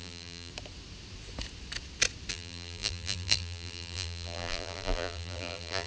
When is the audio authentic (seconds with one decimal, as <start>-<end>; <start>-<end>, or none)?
0.5-2.3